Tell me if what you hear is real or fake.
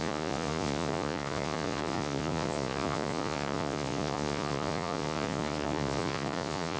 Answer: fake